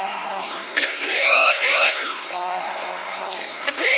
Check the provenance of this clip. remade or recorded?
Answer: remade